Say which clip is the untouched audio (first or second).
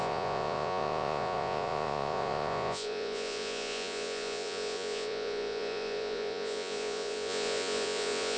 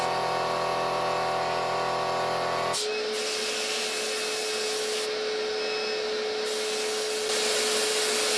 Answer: second